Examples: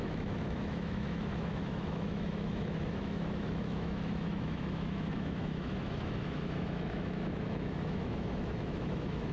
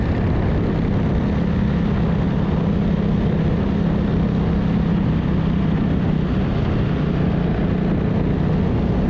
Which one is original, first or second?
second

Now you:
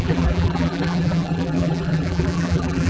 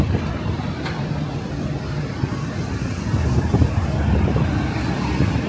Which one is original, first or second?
second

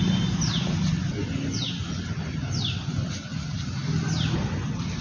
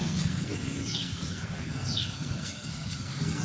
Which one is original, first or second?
first